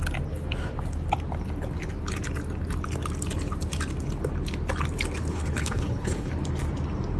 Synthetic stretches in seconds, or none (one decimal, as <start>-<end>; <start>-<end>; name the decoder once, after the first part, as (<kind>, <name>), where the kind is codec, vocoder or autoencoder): 5.3-6.3 (codec, HILCodec)